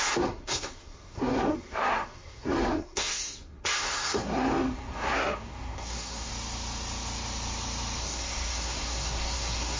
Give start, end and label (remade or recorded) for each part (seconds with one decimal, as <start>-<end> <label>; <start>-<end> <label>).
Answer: 0.0-6.3 remade; 6.3-8.0 recorded; 8.0-9.8 remade